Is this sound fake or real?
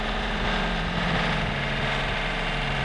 real